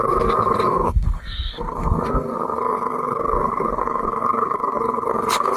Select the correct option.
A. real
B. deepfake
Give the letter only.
B